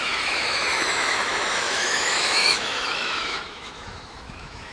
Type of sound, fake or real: fake